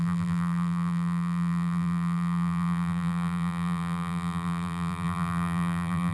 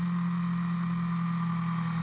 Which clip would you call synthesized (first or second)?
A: first